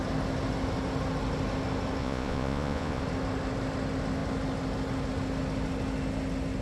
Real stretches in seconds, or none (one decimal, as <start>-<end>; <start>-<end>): 0.0-2.0; 3.0-6.6

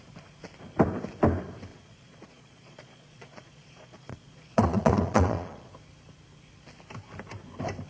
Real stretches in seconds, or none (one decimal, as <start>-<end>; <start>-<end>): 0.0-1.7; 5.7-7.9

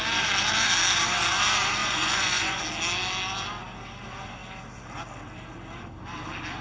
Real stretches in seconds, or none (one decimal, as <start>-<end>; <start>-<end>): 0.0-1.8; 2.6-6.6

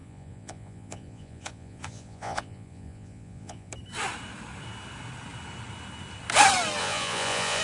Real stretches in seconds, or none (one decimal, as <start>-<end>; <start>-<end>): 3.7-6.8

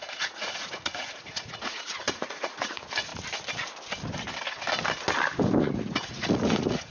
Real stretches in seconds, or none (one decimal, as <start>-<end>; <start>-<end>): 3.1-5.6